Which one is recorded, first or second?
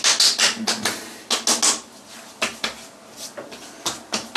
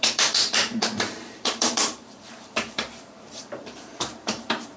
first